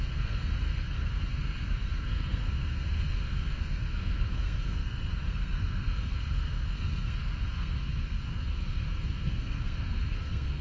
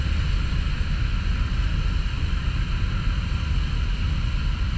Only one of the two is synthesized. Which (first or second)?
first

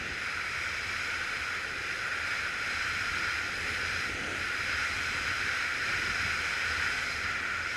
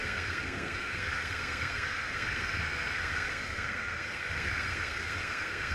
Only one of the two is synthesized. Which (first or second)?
second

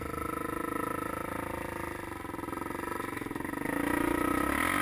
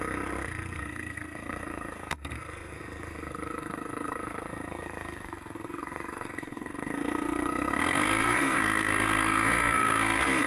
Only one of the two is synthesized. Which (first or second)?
second